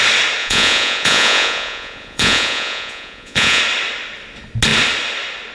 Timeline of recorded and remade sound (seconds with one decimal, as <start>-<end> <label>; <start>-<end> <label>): 0.0-0.4 recorded; 0.4-3.6 remade; 3.6-5.5 recorded